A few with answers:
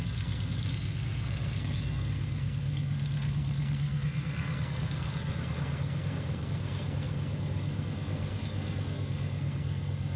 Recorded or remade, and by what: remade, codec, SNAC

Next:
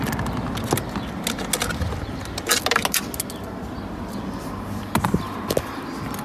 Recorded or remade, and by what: recorded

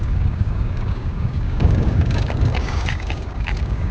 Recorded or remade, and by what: remade, codec, DAC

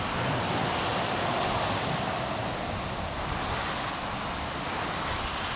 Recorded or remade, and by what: recorded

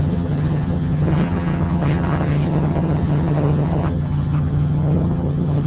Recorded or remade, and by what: remade, vocoder, HiFi-GAN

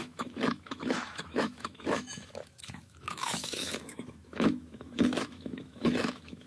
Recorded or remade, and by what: remade, autoencoder, DAC-VAE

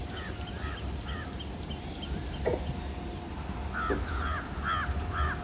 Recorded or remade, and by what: recorded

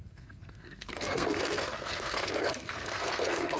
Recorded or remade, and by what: remade, codec, SNAC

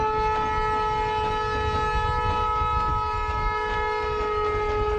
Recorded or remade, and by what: recorded